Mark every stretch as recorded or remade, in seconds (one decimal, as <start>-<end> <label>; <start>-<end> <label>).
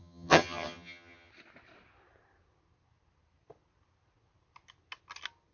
0.0-1.3 remade; 1.3-5.5 recorded